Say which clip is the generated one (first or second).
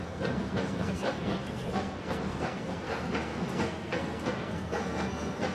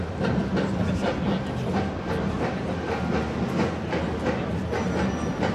first